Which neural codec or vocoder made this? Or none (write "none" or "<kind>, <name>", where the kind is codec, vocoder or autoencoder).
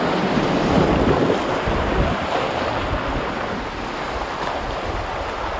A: none